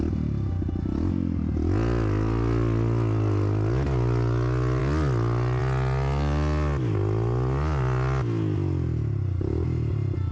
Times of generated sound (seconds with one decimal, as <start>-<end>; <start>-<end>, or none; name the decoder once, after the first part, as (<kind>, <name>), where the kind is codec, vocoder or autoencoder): none